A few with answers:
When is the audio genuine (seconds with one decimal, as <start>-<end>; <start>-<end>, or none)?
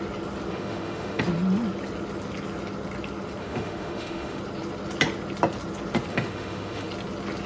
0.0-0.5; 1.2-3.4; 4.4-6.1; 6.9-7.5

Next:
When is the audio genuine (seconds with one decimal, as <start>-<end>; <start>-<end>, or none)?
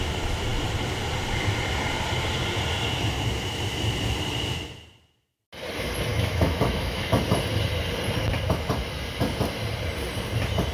0.0-6.1; 7.2-10.7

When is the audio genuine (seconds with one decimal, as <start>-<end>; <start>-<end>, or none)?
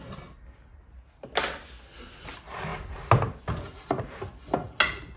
0.0-5.2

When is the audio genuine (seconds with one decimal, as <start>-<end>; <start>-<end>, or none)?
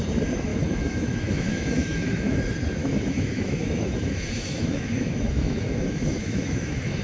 0.0-0.5; 2.4-2.8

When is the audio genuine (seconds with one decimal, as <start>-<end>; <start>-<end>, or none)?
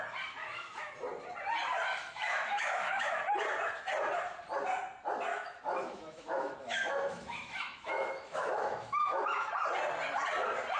0.0-0.4; 0.9-1.9; 3.1-5.3; 9.5-10.8